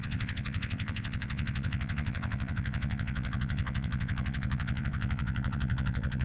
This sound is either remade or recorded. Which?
remade